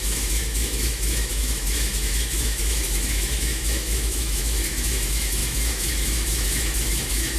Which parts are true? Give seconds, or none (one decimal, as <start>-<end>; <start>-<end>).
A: none